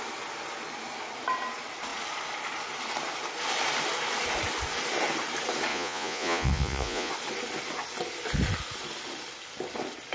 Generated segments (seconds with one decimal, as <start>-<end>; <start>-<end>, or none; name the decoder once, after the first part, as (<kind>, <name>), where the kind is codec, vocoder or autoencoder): 5.7-7.1 (vocoder, Vocos)